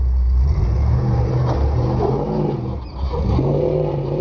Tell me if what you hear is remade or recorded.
recorded